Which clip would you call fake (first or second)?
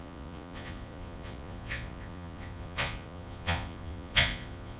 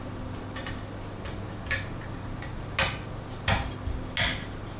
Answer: first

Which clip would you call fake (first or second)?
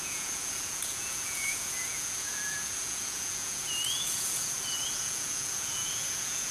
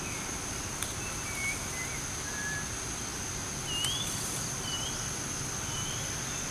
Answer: first